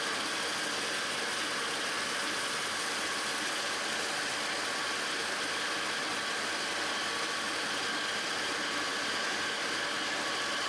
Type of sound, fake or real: real